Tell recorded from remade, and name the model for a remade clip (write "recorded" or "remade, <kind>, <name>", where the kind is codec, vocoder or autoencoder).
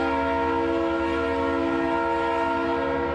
recorded